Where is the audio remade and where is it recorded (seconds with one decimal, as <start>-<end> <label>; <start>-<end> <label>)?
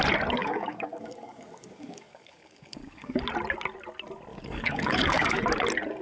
0.0-0.4 recorded; 0.4-3.2 remade; 3.2-4.3 recorded; 4.3-5.4 remade; 5.4-6.0 recorded